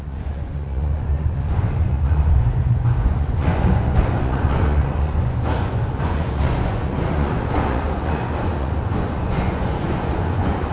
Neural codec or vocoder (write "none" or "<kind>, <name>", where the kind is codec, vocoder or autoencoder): vocoder, Vocos